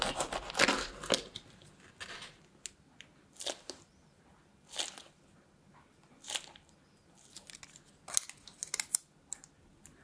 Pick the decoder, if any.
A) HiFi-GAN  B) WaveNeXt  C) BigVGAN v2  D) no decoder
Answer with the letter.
D